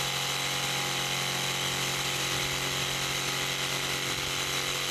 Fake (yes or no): no